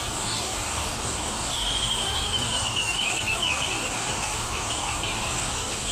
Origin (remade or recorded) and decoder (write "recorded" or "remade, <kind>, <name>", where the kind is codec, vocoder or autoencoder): remade, codec, DAC